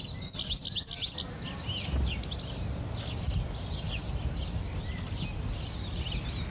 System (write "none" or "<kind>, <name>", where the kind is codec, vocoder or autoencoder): none